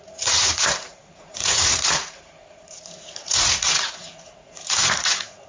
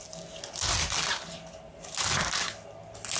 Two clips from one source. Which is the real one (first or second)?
second